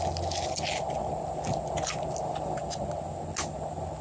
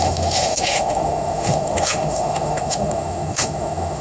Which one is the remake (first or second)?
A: second